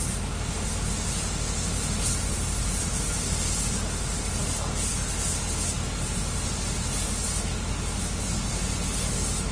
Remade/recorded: recorded